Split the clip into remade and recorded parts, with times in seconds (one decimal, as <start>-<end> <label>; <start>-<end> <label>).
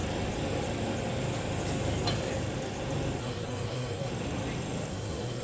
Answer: 0.0-3.2 recorded; 3.2-4.1 remade; 4.1-4.9 recorded; 4.9-5.4 remade